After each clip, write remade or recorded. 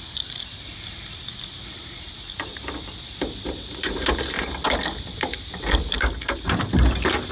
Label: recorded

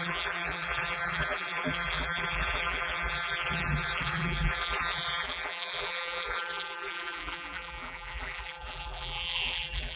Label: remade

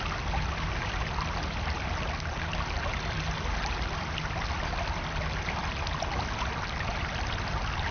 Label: recorded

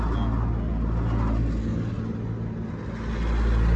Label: recorded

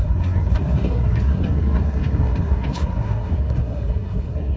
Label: remade